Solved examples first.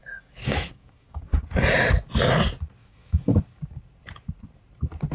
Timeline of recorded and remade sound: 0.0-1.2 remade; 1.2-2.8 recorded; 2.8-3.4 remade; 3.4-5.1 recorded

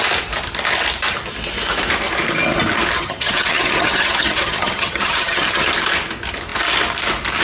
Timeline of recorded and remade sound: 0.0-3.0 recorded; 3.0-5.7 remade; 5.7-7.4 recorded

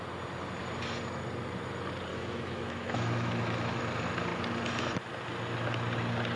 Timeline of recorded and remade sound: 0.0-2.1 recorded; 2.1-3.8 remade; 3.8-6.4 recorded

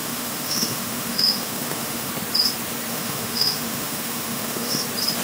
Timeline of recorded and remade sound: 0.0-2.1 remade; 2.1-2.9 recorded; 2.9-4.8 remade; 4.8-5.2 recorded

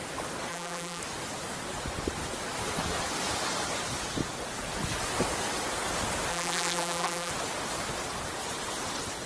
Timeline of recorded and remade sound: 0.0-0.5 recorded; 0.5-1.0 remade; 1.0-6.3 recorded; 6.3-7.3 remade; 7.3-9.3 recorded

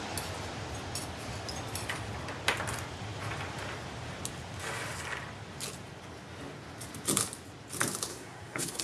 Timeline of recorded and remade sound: 0.0-8.1 recorded; 8.1-8.8 remade

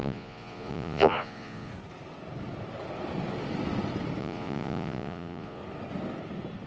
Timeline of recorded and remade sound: 0.0-1.7 remade; 1.7-4.2 recorded; 4.2-5.6 remade; 5.6-6.7 recorded

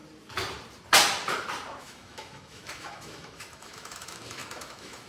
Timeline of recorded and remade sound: 0.0-1.8 recorded; 1.8-5.1 remade